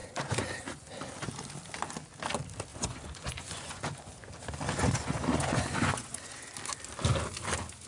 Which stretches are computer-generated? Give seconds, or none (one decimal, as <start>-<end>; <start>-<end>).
0.0-0.9; 2.7-4.3; 4.8-6.5